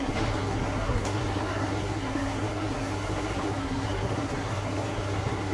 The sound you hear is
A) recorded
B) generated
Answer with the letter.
B